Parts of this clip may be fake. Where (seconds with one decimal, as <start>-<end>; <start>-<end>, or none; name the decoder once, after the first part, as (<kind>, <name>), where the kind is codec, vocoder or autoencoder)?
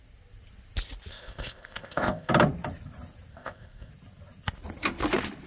1.1-2.3 (codec, ZipCodec); 3.3-3.9